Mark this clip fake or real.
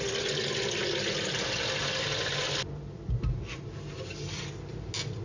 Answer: real